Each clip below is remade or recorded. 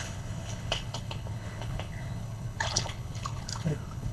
remade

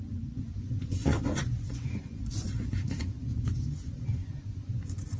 remade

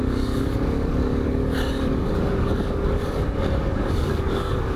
remade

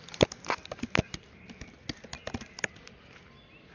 recorded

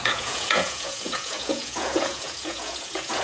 remade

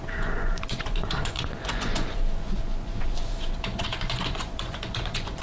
remade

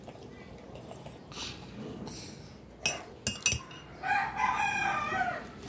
recorded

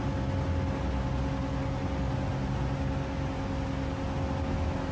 recorded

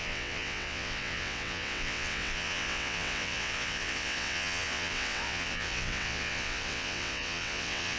remade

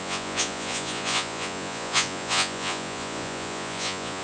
remade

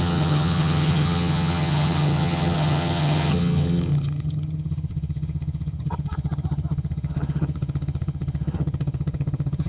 remade